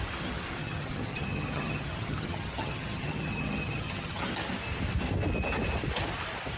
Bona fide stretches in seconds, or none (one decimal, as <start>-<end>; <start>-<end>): 0.0-0.6; 4.2-6.6